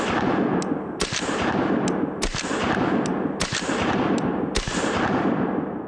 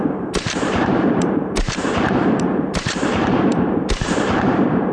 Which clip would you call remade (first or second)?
second